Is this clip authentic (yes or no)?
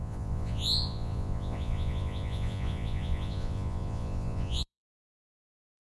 no